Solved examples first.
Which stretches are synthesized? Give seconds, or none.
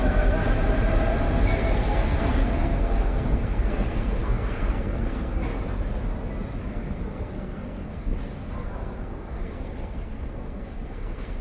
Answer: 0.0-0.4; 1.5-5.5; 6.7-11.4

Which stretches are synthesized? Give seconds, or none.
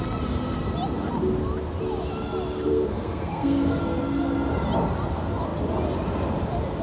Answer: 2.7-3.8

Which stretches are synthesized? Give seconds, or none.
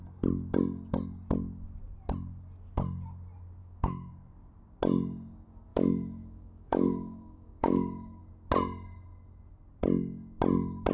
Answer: 3.6-4.1; 5.7-8.2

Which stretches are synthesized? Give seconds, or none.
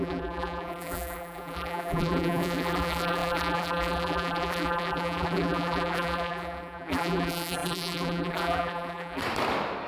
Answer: 0.0-9.2